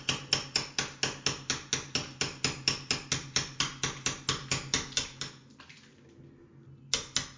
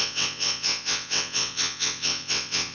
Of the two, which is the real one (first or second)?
first